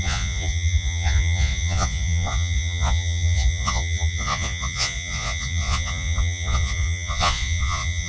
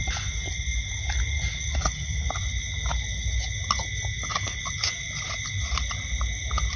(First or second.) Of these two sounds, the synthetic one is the first